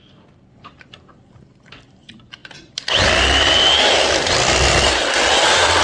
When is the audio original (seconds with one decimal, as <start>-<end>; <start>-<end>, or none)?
none